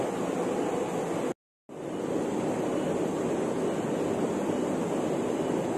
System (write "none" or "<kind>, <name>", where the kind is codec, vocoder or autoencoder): none